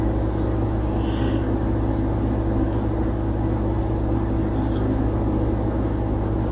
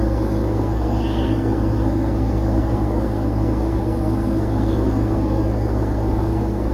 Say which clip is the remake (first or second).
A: second